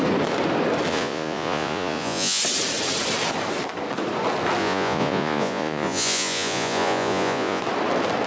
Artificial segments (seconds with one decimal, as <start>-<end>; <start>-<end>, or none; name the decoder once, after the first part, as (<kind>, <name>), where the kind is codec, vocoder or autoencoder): 0.9-2.4 (vocoder, Vocos); 4.6-7.6